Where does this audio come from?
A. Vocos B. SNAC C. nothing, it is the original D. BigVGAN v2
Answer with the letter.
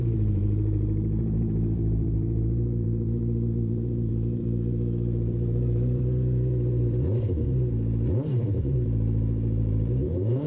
D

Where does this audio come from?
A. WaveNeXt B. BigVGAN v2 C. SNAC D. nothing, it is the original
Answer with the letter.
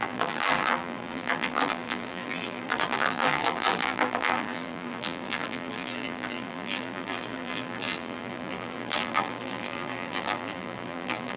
B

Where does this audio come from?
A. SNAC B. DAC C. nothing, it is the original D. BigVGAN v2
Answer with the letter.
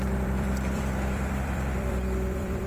D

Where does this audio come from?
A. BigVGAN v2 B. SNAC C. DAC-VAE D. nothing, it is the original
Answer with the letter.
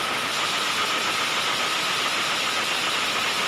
D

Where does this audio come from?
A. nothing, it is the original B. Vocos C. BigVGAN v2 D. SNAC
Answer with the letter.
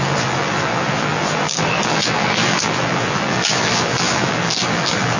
C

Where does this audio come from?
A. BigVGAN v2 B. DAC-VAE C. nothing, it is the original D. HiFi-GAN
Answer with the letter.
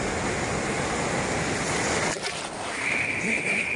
C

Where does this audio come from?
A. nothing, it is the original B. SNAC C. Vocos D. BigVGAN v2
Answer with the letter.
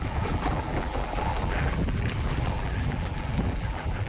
D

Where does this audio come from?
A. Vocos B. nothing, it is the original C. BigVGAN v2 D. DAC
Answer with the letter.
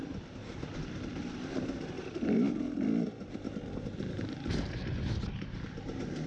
B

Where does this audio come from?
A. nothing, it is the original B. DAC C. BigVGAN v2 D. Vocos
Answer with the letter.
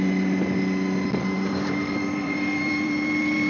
C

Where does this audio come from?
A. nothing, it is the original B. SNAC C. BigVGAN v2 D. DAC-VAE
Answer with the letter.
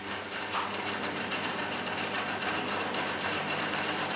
C